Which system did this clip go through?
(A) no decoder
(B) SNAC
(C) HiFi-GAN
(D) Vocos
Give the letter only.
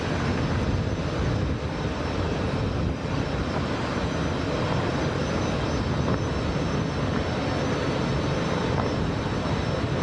A